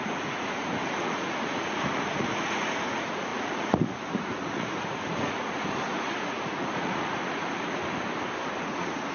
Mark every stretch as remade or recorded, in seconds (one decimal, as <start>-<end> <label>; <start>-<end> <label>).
0.0-7.8 remade; 7.8-8.6 recorded; 8.6-9.1 remade